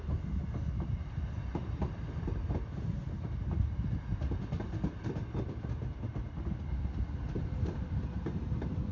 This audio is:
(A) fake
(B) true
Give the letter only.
B